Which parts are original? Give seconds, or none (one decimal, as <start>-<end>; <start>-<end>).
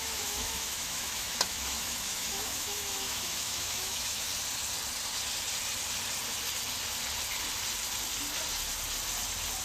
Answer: 4.3-9.6